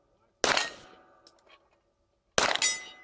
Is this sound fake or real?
real